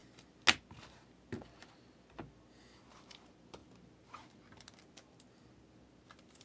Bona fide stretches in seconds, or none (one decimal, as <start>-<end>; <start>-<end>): 0.0-6.4